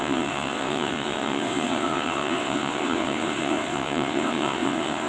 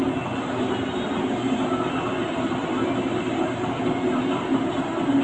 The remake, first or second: first